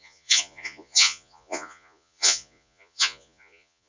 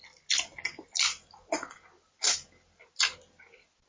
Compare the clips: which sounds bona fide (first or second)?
second